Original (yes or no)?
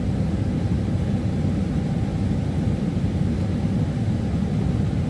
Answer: yes